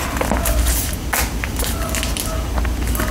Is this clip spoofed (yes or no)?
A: no